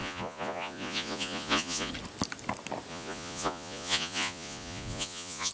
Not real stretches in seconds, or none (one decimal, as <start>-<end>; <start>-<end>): 0.0-1.9; 2.9-5.5